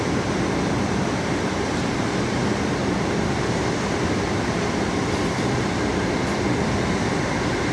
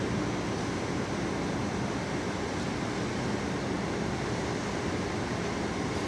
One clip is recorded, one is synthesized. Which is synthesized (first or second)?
first